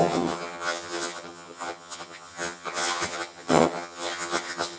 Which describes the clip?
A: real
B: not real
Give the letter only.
B